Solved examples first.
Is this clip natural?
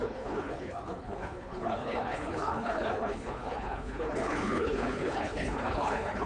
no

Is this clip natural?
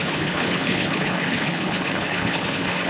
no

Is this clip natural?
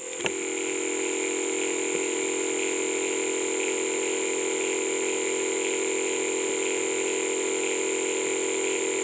yes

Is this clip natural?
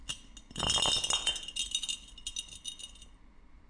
yes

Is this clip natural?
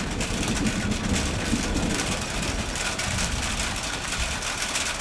yes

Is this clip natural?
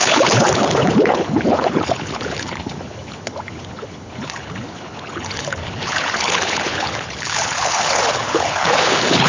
no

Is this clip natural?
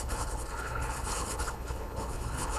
no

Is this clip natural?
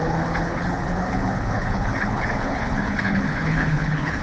no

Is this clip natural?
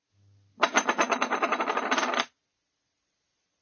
yes